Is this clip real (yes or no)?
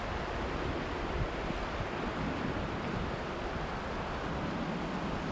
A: yes